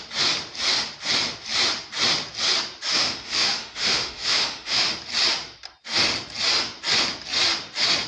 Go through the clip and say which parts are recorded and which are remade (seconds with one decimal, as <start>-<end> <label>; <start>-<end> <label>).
0.0-2.9 recorded; 2.9-4.9 remade; 4.9-8.1 recorded